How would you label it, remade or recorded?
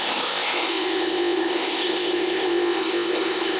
remade